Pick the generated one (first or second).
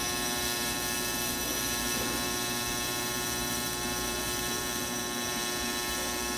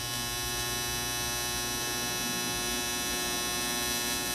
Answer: first